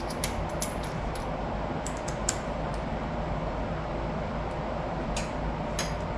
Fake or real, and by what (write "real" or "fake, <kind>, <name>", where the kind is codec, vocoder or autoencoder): real